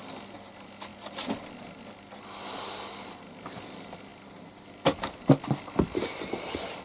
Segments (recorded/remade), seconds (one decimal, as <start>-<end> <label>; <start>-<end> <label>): 0.0-6.8 recorded